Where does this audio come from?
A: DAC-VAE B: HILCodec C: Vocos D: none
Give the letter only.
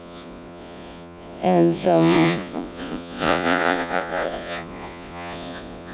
C